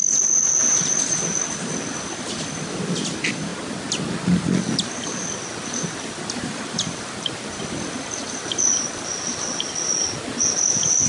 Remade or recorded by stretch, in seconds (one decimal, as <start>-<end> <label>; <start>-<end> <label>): 0.0-11.1 recorded